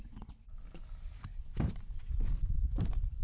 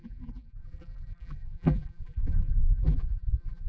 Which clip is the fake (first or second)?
second